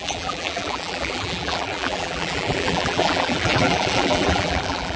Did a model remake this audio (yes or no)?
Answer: yes